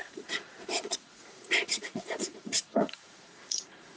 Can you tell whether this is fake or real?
fake